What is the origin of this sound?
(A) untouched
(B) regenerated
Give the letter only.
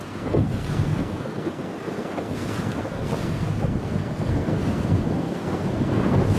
B